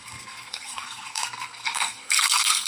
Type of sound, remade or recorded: remade